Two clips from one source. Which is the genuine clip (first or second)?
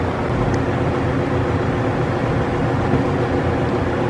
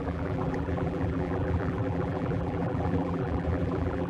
first